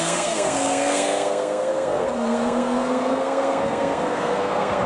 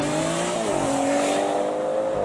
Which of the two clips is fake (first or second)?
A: first